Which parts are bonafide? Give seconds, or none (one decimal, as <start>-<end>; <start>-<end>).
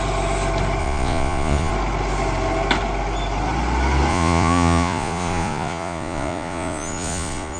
0.0-0.8; 1.7-4.1